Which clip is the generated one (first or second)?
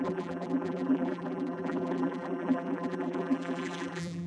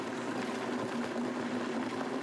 first